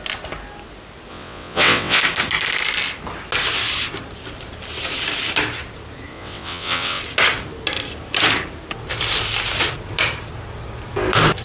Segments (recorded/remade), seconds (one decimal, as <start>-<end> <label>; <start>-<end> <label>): 0.0-1.1 recorded; 1.1-2.0 remade; 2.0-6.1 recorded; 6.1-7.0 remade; 7.0-11.4 recorded